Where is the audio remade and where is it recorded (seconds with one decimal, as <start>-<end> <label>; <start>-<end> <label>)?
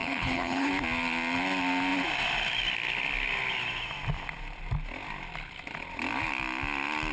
0.0-0.7 remade; 0.7-7.1 recorded